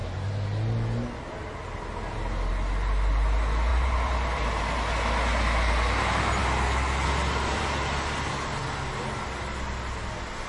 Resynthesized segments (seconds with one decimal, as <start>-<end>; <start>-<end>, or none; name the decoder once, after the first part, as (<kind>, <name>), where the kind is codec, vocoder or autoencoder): 3.7-4.9 (vocoder, BigVGAN v2)